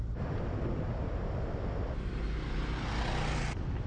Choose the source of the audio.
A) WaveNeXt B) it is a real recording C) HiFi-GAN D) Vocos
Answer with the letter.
B